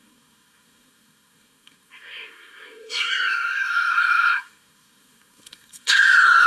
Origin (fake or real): fake